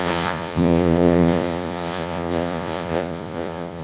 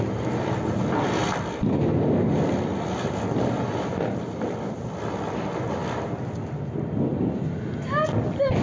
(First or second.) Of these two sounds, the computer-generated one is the first